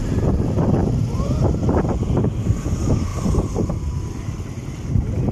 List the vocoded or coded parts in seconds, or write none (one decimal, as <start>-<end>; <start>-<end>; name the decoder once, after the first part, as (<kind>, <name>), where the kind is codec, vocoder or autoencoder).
0.8-1.4 (vocoder, BigVGAN v2); 3.1-3.7